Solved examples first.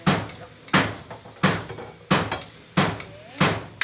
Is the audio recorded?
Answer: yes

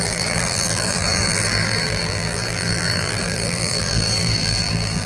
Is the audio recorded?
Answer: no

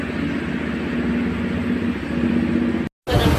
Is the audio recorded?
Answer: yes